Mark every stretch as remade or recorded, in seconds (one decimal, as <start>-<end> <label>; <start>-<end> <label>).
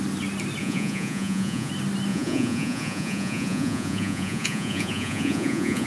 0.0-0.6 recorded; 0.6-1.7 remade; 1.7-2.1 recorded; 2.1-5.9 remade